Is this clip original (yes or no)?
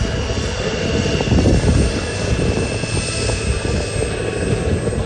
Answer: yes